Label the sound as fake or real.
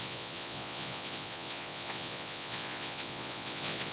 fake